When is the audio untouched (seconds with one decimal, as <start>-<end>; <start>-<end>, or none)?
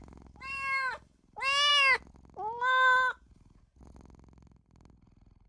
0.0-5.5